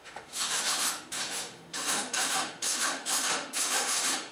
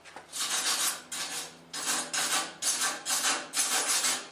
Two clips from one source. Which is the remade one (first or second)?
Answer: first